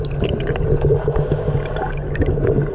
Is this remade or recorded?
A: recorded